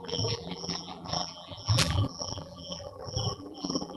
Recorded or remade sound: remade